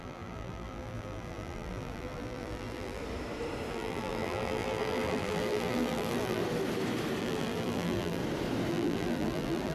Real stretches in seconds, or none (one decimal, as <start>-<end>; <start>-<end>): 3.0-3.7; 6.4-7.2; 8.2-8.7